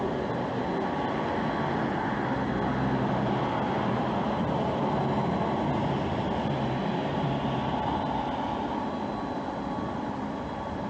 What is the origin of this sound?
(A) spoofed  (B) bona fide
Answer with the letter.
B